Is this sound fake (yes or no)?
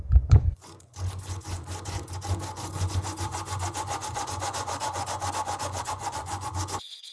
yes